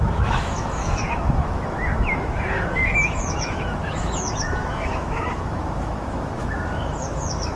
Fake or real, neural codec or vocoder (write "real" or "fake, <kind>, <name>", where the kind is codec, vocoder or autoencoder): fake, autoencoder, DAC-VAE